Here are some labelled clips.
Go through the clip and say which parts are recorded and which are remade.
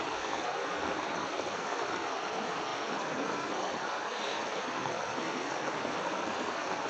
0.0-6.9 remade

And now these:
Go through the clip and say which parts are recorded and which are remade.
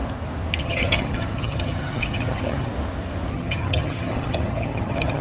0.0-0.6 recorded; 0.6-2.7 remade; 2.7-3.3 recorded; 3.3-5.2 remade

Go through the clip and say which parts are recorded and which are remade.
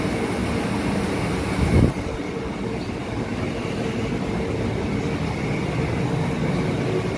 0.0-7.2 recorded